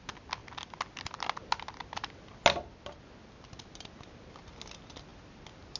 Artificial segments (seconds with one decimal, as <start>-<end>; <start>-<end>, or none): none